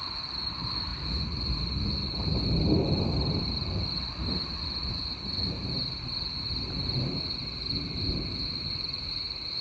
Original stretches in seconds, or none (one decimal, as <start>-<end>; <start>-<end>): 0.9-3.4; 4.2-8.4